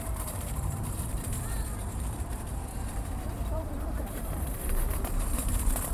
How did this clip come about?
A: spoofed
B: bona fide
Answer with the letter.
A